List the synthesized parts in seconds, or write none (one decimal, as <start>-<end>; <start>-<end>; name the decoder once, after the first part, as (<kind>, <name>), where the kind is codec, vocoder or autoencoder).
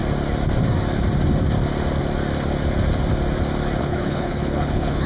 3.8-5.1 (codec, HILCodec)